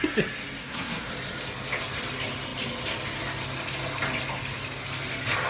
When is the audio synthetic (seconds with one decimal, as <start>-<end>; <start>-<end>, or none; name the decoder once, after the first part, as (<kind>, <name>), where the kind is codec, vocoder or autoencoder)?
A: 0.6-1.1 (codec, SNAC)